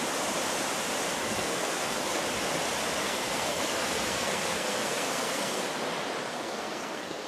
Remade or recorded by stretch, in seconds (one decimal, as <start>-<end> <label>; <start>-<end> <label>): 0.0-1.2 recorded; 1.2-2.2 remade; 2.2-3.0 recorded; 3.0-5.6 remade; 5.6-6.3 recorded; 6.3-7.3 remade

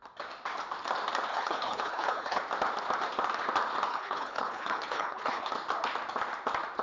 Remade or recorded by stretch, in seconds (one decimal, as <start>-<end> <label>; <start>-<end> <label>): 0.0-1.3 recorded; 1.3-2.4 remade; 2.4-3.9 recorded; 3.9-5.5 remade; 5.5-6.8 recorded

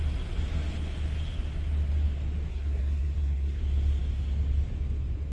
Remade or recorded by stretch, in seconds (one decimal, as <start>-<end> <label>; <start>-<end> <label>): 0.0-2.5 recorded; 2.5-3.6 remade; 3.6-5.3 recorded

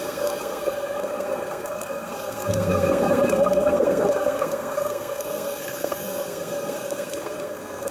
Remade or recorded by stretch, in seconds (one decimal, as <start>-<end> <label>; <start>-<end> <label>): 0.0-7.9 remade

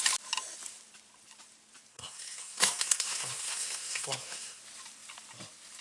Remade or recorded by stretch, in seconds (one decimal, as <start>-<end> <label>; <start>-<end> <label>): 0.0-1.9 recorded; 1.9-4.6 remade; 4.6-5.8 recorded

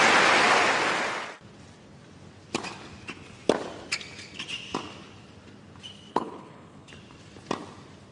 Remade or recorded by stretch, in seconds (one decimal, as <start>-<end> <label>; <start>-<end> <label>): 0.0-6.1 recorded; 6.1-6.9 remade; 6.9-8.1 recorded

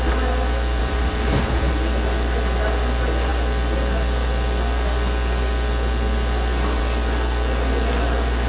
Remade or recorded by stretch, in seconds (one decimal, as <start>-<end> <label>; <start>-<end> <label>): 0.0-0.8 recorded; 0.8-1.7 remade; 1.7-8.5 recorded

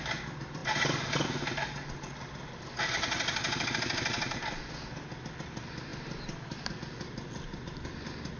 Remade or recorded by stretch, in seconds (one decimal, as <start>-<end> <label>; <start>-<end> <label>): 0.0-8.4 recorded